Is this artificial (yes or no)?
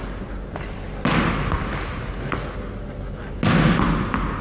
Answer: no